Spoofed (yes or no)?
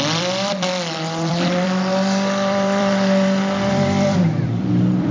yes